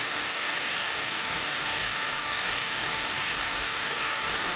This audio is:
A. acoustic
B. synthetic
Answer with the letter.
B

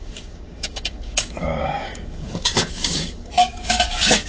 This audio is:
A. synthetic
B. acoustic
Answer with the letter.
A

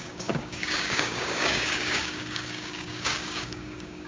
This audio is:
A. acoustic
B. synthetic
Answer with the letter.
B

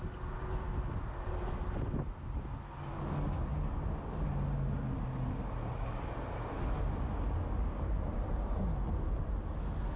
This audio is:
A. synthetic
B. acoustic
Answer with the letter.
B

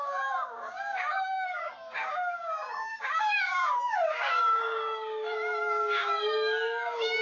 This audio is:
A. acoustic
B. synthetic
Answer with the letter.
B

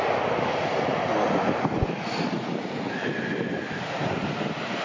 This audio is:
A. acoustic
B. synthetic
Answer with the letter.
A